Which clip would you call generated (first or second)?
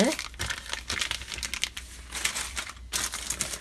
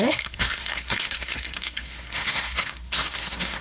second